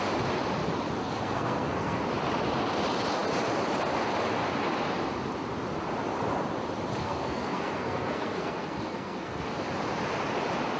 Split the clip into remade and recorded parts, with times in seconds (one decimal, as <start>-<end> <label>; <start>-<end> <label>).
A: 0.0-1.0 recorded; 1.0-2.0 remade; 2.0-7.0 recorded; 7.0-9.6 remade; 9.6-10.8 recorded